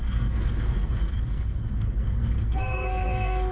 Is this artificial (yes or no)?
yes